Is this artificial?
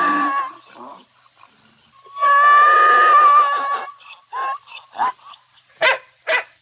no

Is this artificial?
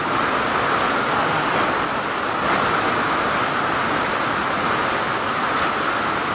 no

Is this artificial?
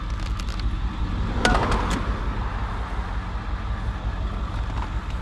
no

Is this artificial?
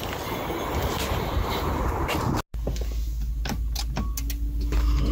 no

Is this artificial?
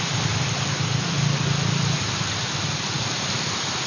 no